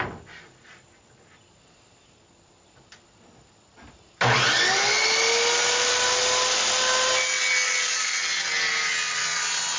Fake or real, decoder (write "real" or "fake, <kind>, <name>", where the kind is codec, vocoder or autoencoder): real